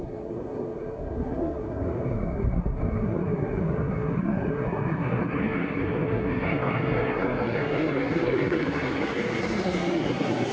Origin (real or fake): fake